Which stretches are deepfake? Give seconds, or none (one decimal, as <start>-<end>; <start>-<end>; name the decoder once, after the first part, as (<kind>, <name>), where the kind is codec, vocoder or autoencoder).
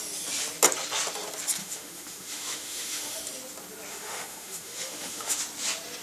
1.6-3.2 (autoencoder, DAC-VAE); 3.9-5.4